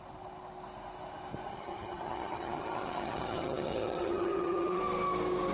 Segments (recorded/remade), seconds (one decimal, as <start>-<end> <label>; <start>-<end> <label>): 0.0-1.5 recorded; 1.5-4.8 remade; 4.8-5.5 recorded

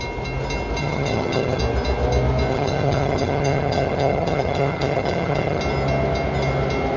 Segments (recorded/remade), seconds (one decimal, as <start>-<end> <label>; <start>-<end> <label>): 0.0-0.8 recorded; 0.8-1.6 remade; 1.6-2.5 recorded; 2.5-5.6 remade; 5.6-7.0 recorded

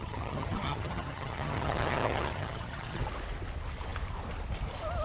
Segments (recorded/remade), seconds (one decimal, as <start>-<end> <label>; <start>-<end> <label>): 0.0-3.0 remade; 3.0-5.0 recorded

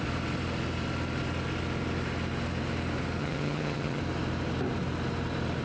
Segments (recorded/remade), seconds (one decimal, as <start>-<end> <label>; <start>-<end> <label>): 0.0-3.2 recorded; 3.2-4.0 remade; 4.0-5.6 recorded

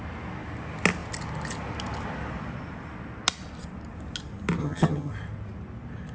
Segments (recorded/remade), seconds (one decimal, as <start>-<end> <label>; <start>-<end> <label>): 0.0-4.6 recorded; 4.6-5.1 remade; 5.1-6.1 recorded

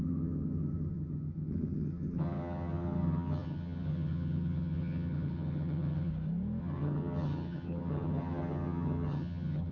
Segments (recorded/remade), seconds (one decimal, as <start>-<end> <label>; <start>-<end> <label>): 0.0-6.1 remade; 6.1-6.6 recorded; 6.6-9.7 remade